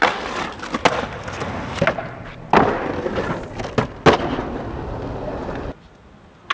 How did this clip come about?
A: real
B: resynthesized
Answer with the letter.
A